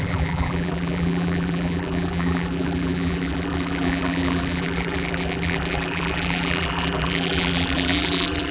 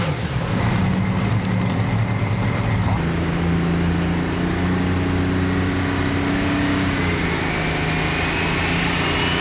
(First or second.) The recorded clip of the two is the second